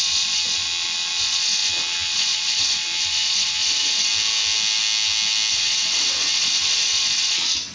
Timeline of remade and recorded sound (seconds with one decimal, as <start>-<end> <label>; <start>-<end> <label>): 0.0-4.1 remade; 4.1-5.5 recorded; 5.5-7.7 remade